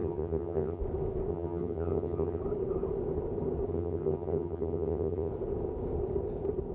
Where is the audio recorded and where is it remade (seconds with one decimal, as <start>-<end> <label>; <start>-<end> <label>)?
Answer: 0.0-0.8 remade; 0.8-1.3 recorded; 1.3-2.4 remade; 2.4-3.7 recorded; 3.7-5.3 remade; 5.3-6.7 recorded